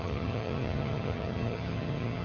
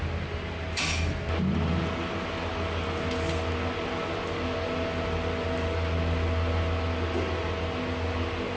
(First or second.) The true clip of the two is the second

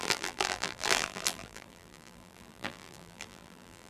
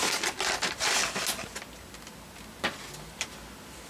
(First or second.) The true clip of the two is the second